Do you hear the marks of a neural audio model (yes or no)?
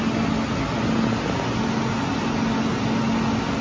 no